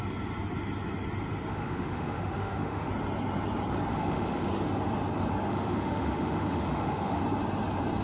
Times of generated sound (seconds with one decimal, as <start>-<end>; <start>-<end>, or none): 1.5-2.9; 3.9-4.5; 5.5-7.2